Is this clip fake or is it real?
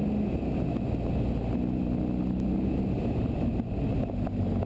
real